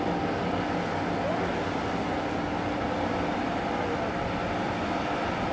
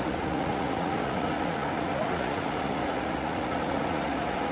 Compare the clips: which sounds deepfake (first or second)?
second